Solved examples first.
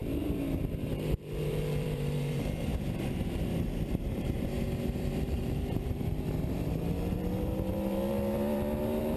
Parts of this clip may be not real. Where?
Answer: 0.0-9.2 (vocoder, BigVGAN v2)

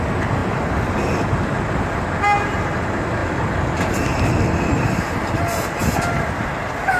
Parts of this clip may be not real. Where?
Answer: 0.4-1.6 (vocoder, BigVGAN v2); 3.2-5.3; 5.8-6.5

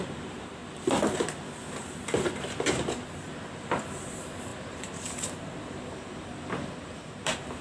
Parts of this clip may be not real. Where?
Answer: 0.0-0.6 (vocoder, BigVGAN v2); 2.7-7.6